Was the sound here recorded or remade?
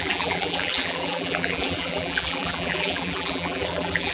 remade